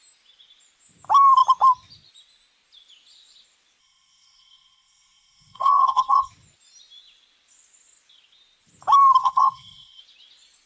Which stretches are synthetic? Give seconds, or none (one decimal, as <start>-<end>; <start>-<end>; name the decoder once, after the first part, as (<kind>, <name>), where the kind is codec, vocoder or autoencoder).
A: 3.8-6.3 (codec, SNAC); 9.2-10.0